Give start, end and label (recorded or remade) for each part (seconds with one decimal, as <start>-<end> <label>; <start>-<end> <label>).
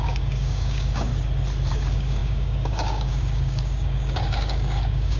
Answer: 0.0-1.1 remade; 1.1-1.7 recorded; 1.7-5.2 remade